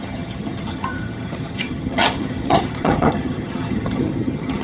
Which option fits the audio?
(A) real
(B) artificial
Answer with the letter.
B